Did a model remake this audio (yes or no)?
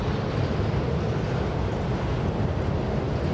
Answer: no